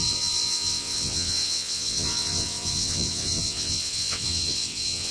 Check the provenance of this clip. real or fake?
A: fake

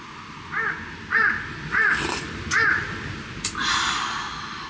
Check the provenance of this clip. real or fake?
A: real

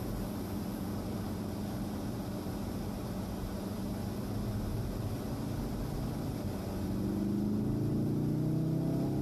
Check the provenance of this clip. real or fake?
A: real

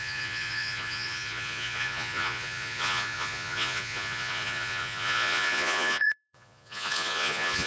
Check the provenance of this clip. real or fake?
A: fake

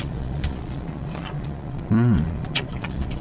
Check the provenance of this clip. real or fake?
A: fake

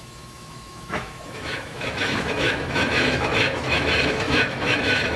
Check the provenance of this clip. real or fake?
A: fake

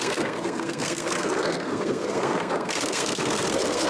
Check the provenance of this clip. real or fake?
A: fake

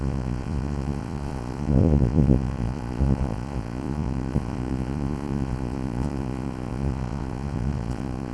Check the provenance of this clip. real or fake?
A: fake